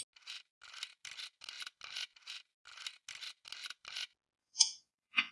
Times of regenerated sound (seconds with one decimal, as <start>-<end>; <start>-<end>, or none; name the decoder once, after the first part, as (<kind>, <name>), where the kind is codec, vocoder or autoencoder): 4.4-5.3 (vocoder, Vocos)